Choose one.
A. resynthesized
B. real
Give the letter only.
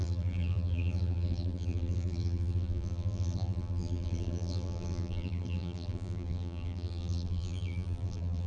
A